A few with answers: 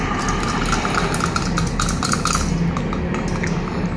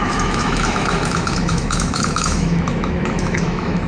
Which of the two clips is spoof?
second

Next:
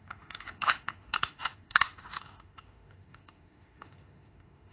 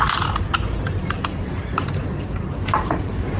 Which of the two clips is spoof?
first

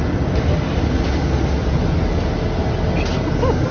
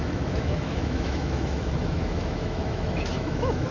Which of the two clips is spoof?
second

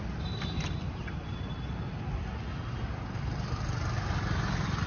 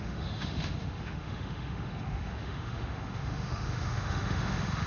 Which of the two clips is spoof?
second